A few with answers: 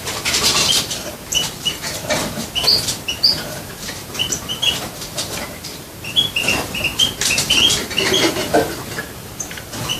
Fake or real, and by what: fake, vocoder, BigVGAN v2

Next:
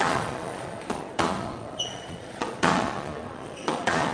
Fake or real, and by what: fake, vocoder, Vocos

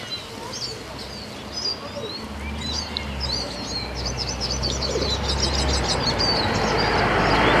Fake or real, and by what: real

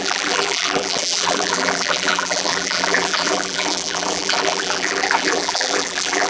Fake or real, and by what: fake, vocoder, BigVGAN v2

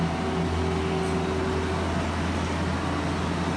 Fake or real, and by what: real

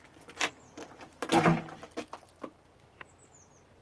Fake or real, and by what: fake, vocoder, BigVGAN v2